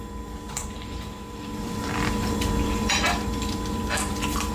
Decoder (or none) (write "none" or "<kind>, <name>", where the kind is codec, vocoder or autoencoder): vocoder, BigVGAN v2